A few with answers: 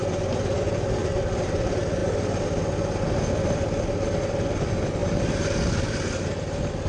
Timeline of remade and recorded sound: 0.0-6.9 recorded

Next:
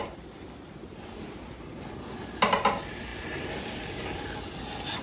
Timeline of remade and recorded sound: 0.0-3.1 recorded; 3.1-3.6 remade; 3.6-5.0 recorded

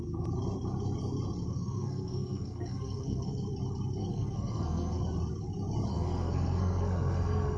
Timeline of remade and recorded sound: 0.0-1.5 recorded; 1.5-3.3 remade; 3.3-4.0 recorded; 4.0-5.0 remade; 5.0-5.9 recorded; 5.9-7.6 remade

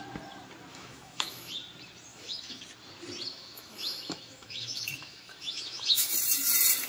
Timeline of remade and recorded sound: 0.0-0.7 recorded; 0.7-1.5 remade; 1.5-2.1 recorded; 2.1-2.6 remade; 2.6-3.3 recorded; 3.3-6.1 remade; 6.1-6.9 recorded